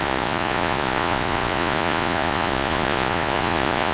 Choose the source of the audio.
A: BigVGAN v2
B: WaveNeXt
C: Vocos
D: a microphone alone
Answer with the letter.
C